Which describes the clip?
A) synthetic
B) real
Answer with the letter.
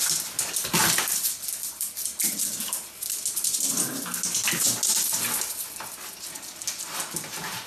B